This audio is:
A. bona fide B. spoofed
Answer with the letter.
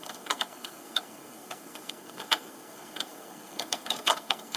B